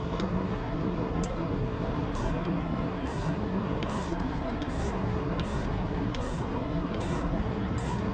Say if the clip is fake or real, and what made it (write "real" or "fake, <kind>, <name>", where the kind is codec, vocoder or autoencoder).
fake, codec, SNAC